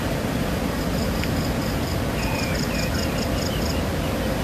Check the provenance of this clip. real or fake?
real